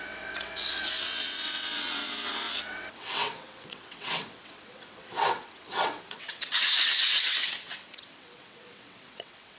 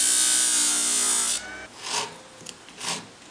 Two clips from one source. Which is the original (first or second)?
second